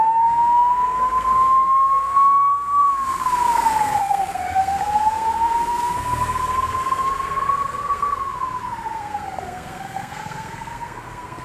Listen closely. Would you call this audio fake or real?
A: fake